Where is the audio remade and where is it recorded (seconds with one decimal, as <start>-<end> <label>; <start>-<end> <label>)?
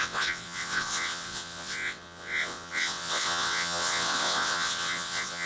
0.0-5.5 remade